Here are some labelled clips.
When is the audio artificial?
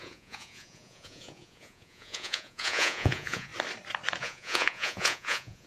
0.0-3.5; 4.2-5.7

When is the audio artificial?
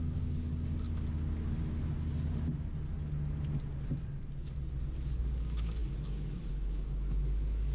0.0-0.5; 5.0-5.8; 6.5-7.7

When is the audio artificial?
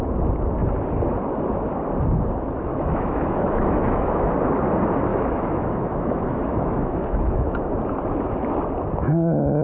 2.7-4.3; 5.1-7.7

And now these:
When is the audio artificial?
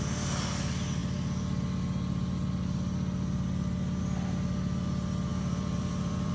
5.3-6.3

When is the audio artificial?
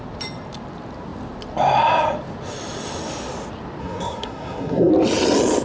3.8-4.9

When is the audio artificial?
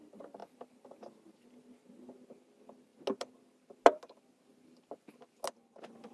none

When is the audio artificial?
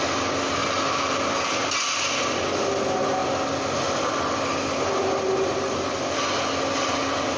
none